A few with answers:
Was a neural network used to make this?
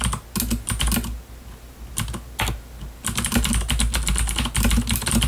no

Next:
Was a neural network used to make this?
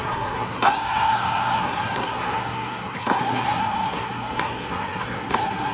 yes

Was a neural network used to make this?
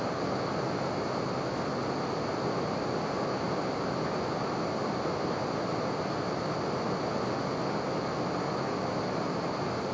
no